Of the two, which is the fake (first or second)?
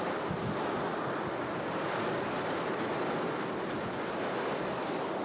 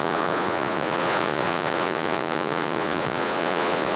second